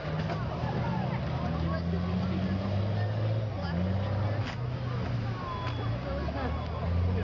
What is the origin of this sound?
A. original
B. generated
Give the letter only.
A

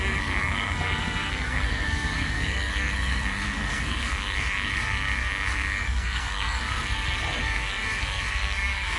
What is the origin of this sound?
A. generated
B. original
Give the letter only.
A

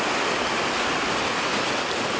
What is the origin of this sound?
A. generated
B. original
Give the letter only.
B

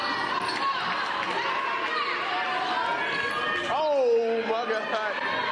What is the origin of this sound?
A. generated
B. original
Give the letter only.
B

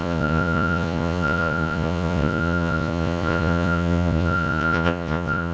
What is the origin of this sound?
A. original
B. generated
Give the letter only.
B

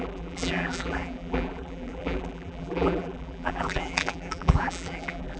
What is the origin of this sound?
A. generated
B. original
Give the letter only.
A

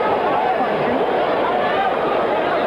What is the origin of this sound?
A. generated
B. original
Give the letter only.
B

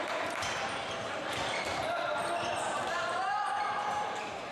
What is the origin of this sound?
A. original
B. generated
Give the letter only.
B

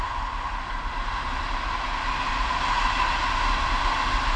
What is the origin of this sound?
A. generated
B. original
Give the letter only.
B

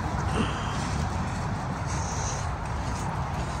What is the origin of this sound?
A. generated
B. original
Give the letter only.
B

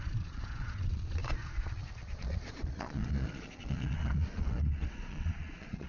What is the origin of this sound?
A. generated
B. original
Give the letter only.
A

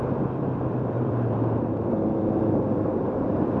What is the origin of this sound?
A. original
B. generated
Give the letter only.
B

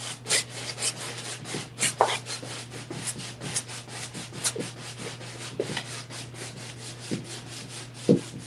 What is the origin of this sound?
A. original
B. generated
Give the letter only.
A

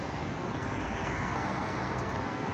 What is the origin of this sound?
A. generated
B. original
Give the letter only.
A